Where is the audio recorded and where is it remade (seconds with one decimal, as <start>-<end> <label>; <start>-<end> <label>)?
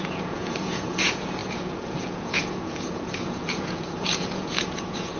0.0-5.2 remade